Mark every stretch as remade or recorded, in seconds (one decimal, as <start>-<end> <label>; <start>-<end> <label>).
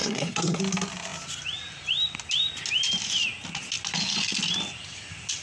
0.0-0.6 remade; 0.6-5.4 recorded